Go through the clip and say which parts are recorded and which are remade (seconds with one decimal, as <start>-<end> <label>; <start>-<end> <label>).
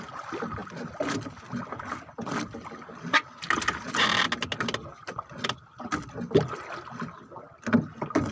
0.0-8.3 recorded